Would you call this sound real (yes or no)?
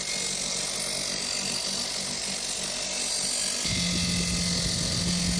yes